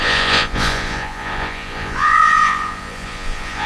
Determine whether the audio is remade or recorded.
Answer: remade